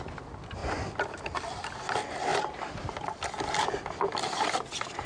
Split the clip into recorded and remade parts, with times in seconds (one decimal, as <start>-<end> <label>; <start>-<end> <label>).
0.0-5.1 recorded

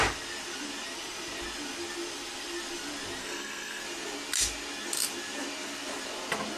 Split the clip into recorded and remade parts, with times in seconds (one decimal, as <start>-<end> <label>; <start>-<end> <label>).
0.0-3.2 recorded; 3.2-3.8 remade; 3.8-6.6 recorded

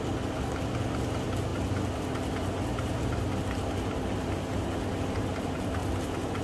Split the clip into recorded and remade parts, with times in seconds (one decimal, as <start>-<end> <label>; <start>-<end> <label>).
0.0-6.4 recorded

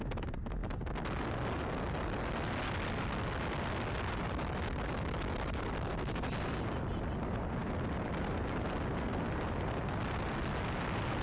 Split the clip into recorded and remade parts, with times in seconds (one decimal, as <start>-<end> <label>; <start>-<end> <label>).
0.0-11.2 recorded